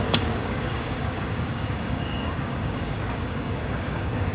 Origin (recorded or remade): remade